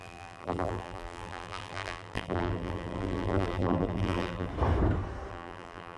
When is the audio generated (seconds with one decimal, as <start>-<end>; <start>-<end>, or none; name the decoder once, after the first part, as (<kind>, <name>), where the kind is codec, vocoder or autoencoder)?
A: 0.0-4.5 (vocoder, BigVGAN v2); 5.3-6.0